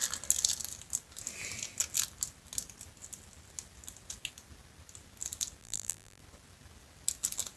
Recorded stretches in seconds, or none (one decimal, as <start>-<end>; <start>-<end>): 0.0-5.6; 6.2-7.6